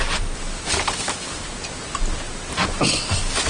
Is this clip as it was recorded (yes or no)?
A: yes